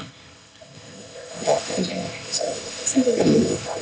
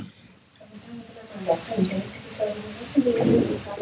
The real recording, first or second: second